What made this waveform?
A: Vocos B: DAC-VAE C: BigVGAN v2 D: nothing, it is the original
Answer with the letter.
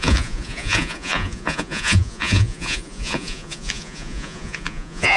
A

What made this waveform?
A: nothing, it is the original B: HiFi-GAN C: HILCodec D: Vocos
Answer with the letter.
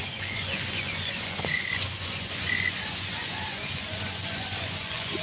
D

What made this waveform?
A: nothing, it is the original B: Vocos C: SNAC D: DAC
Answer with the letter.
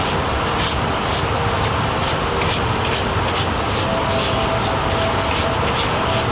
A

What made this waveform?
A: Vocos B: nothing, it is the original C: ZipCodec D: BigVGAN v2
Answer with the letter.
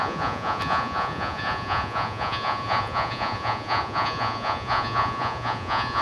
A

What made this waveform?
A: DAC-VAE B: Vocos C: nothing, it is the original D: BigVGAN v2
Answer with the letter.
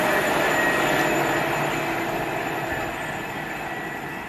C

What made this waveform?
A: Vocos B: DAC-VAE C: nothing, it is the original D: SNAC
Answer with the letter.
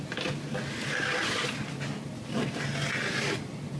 C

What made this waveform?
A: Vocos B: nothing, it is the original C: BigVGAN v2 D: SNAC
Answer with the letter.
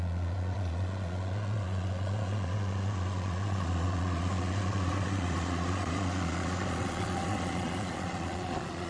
A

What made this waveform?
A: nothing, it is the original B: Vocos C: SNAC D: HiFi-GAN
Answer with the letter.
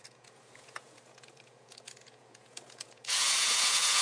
B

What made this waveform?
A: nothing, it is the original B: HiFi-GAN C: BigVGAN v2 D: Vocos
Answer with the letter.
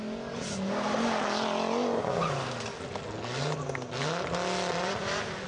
A